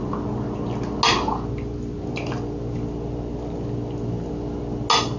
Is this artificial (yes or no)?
no